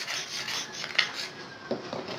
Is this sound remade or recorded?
recorded